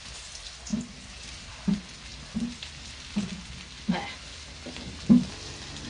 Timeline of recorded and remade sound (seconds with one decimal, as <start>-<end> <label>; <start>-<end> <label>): 0.0-5.9 recorded